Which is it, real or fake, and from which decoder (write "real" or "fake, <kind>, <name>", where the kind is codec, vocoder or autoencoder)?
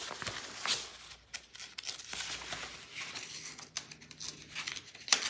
real